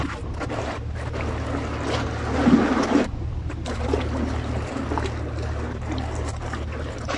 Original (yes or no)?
yes